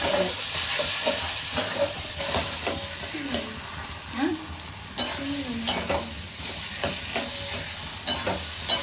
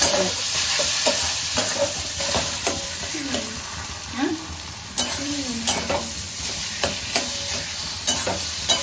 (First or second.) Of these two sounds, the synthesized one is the second